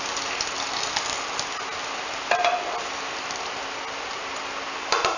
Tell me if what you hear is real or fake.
real